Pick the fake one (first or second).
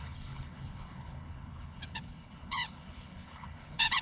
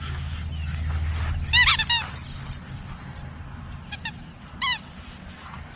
first